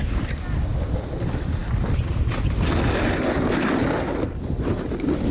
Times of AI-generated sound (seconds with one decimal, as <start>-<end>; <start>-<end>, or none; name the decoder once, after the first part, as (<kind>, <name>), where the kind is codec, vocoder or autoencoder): none